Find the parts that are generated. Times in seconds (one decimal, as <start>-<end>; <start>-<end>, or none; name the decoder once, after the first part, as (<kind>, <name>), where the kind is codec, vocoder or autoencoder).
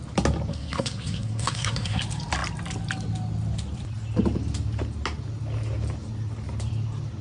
0.5-2.0 (codec, SNAC)